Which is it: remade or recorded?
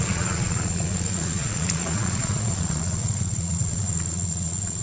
remade